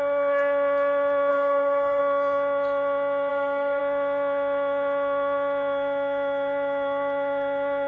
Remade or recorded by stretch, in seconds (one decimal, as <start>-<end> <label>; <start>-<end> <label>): 0.0-1.3 recorded; 1.3-2.0 remade; 2.0-3.3 recorded; 3.3-3.8 remade; 3.8-7.9 recorded